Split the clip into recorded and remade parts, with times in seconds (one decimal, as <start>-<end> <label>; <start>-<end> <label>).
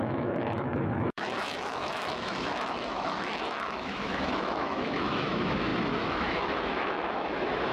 0.0-7.7 remade